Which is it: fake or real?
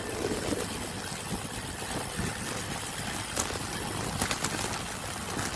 real